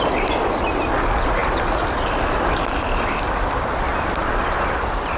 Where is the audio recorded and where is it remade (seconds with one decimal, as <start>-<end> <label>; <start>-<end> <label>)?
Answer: 0.0-5.2 recorded